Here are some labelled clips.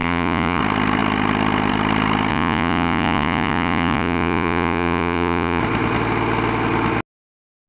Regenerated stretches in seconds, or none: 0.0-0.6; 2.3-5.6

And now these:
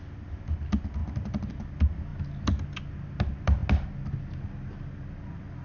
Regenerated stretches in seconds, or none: none

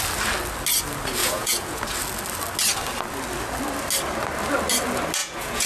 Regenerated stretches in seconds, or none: 1.2-1.8; 5.2-5.7